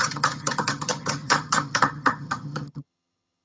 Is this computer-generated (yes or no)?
yes